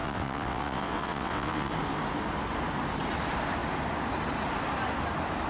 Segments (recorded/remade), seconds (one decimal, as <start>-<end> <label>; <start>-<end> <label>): 0.0-1.7 remade; 1.7-5.5 recorded